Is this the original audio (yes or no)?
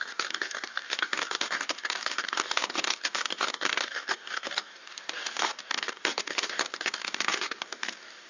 no